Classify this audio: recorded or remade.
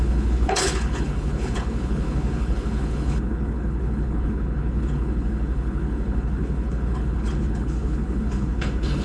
remade